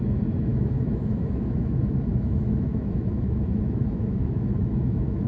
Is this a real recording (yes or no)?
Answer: no